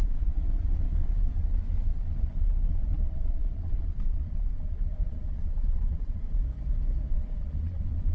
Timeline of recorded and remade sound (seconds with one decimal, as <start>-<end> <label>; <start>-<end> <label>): 0.0-6.4 remade; 6.4-7.1 recorded; 7.1-8.1 remade